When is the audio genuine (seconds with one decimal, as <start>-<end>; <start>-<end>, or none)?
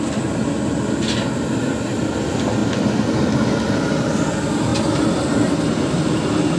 0.0-6.6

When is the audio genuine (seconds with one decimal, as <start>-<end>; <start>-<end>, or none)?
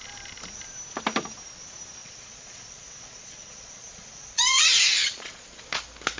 0.0-2.0; 5.7-6.2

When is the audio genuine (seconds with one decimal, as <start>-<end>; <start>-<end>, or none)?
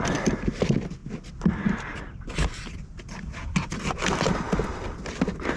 0.0-5.6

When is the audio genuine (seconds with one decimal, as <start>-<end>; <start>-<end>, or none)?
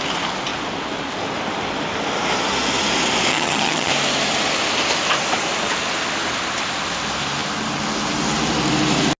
0.0-3.3; 3.9-9.2